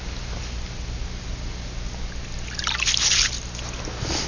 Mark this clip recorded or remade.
recorded